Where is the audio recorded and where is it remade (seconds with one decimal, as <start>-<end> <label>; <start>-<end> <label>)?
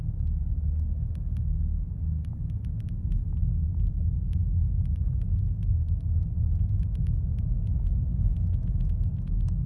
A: 0.0-3.4 recorded; 3.4-4.8 remade; 4.8-9.7 recorded